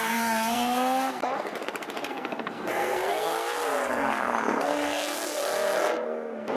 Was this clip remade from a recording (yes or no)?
yes